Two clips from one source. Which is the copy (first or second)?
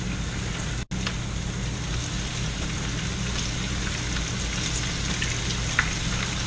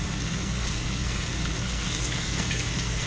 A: second